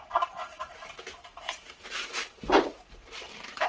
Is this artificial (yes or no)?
yes